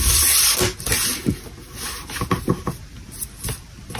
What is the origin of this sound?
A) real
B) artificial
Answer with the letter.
A